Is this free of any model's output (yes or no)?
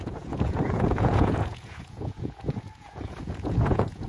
no